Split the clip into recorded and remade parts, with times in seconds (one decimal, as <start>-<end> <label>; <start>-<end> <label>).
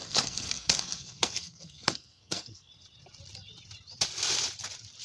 0.0-2.7 remade; 2.7-5.0 recorded